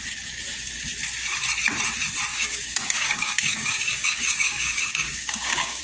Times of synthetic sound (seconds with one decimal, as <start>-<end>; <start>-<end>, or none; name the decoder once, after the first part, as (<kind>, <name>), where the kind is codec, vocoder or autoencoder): 2.3-5.8 (codec, DAC)